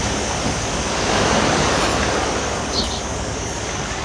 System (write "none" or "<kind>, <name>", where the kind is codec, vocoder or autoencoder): codec, DAC